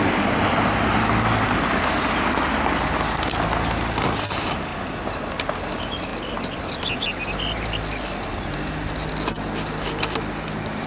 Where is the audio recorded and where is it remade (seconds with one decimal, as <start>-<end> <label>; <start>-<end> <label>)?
0.0-10.9 recorded